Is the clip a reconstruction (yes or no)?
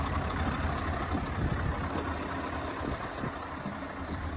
no